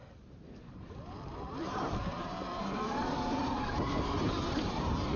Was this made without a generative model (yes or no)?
no